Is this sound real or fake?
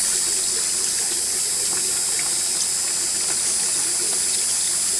real